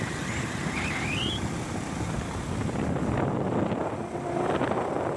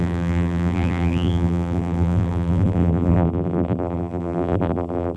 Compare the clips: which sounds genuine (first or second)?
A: first